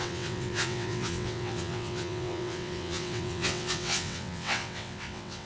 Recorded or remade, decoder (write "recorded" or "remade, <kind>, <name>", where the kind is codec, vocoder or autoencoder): remade, vocoder, WaveNeXt